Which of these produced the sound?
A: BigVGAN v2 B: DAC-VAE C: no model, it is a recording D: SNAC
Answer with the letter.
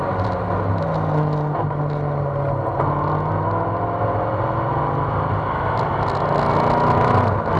C